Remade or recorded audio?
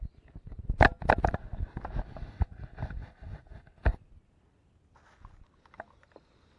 recorded